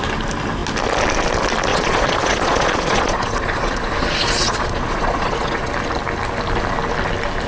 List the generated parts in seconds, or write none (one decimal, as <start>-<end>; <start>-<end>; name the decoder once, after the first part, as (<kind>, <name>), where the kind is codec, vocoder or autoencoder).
1.7-5.7 (vocoder, Vocos)